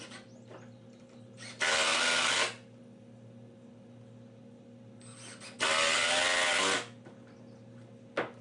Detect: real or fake real